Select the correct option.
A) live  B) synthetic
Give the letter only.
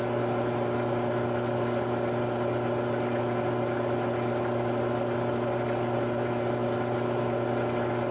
A